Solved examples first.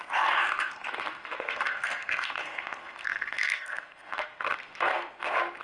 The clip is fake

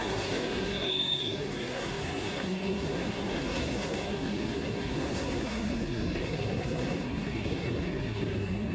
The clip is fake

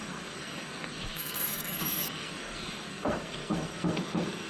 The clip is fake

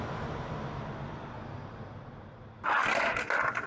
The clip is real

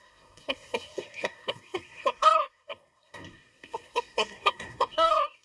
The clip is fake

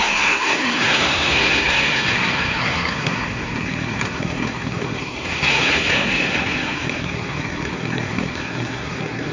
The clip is fake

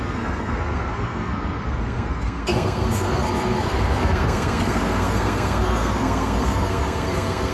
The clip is fake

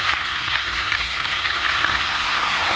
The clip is fake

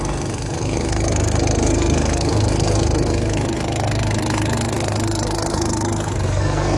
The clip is fake